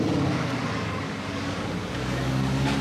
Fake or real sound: fake